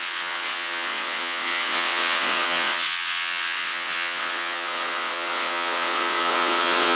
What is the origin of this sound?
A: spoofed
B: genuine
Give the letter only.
A